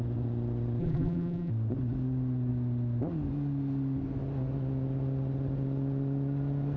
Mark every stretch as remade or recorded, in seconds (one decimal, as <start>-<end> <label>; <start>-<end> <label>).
0.0-0.8 recorded; 0.8-1.5 remade; 1.5-6.8 recorded